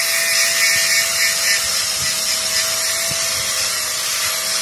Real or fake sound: real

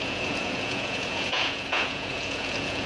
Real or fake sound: fake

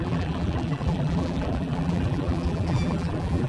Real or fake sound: fake